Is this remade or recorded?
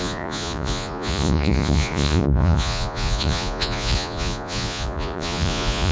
remade